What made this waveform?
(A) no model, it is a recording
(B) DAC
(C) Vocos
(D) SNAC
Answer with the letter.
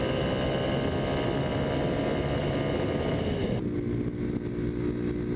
A